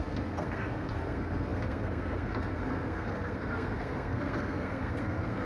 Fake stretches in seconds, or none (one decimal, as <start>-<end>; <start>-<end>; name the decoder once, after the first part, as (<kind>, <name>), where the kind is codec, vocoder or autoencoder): 0.0-5.5 (codec, SNAC)